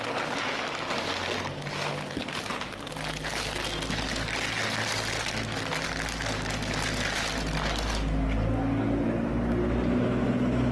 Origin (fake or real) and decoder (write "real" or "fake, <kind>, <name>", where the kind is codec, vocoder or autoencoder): real